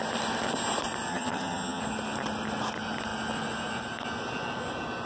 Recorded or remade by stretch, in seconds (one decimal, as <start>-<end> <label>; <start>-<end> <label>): 0.0-1.1 recorded; 1.1-1.8 remade; 1.8-5.1 recorded